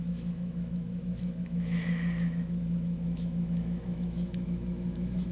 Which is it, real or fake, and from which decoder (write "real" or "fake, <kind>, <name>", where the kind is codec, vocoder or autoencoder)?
fake, autoencoder, DAC-VAE